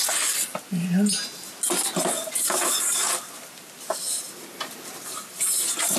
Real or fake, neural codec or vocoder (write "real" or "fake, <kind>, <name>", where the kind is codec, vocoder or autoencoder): real